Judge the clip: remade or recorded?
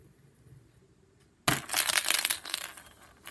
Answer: recorded